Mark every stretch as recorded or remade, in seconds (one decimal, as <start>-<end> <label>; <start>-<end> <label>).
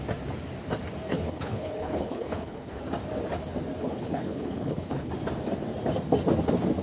0.0-1.1 recorded; 1.1-2.8 remade; 2.8-3.8 recorded; 3.8-5.1 remade; 5.1-6.8 recorded